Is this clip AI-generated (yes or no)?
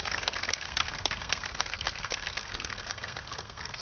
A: yes